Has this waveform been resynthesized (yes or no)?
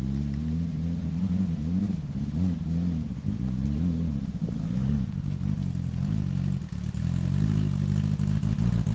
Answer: no